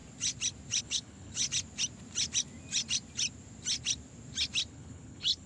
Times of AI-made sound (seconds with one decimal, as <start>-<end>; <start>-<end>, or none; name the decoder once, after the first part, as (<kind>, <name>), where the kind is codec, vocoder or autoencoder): 0.8-1.4 (codec, HILCodec); 4.7-5.5